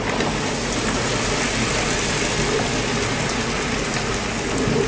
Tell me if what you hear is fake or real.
real